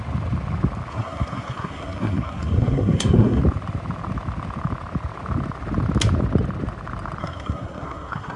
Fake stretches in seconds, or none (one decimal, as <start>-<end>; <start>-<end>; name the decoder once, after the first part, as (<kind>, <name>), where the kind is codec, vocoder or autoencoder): 0.9-3.4 (codec, SNAC); 7.2-8.4